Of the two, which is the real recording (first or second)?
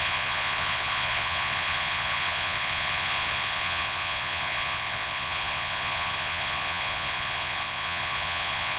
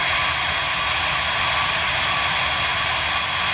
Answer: second